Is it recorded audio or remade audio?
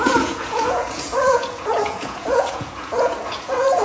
remade